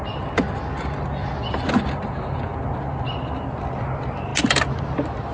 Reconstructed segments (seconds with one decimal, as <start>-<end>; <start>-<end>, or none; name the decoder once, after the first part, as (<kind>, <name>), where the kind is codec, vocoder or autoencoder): none